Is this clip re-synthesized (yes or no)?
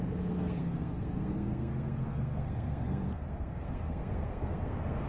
yes